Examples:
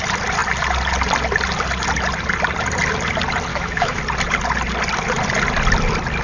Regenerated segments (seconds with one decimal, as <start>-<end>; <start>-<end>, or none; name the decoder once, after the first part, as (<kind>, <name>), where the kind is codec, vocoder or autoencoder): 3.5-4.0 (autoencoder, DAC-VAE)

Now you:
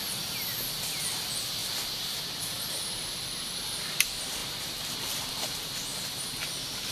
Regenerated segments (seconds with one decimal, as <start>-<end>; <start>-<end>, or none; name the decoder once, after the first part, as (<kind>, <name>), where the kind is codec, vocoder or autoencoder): 0.0-4.4 (vocoder, BigVGAN v2); 5.0-6.9

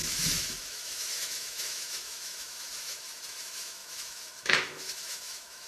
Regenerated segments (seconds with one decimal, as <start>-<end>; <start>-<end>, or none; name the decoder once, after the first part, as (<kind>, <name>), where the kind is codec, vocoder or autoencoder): 0.0-5.7 (autoencoder, DAC-VAE)